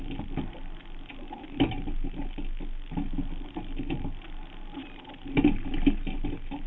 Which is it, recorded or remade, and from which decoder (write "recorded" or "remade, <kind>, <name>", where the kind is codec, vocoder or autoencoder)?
recorded